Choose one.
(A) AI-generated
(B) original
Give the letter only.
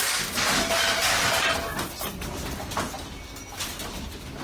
B